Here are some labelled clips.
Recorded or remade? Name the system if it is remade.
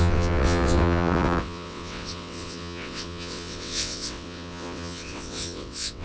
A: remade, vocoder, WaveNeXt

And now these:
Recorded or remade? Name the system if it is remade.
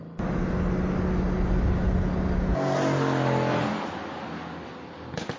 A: recorded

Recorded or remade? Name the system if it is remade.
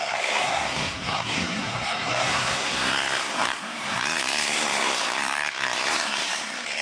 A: remade, codec, SNAC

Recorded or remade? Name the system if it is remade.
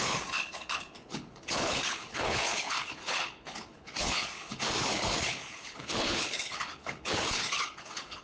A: remade, codec, HILCodec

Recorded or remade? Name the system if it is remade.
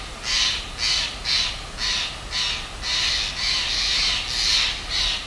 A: recorded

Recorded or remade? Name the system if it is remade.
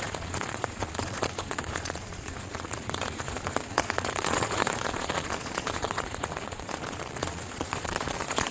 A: remade, vocoder, Vocos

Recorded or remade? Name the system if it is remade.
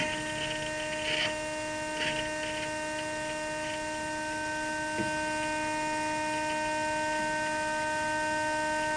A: recorded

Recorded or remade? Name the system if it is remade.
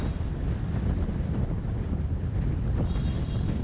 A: recorded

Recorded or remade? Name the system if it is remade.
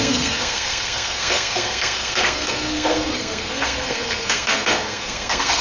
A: remade, codec, SNAC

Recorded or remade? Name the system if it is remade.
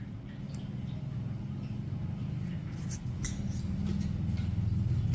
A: recorded